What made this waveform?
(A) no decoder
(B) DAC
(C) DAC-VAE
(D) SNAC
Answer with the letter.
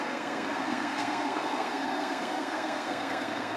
D